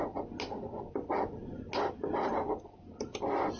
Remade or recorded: recorded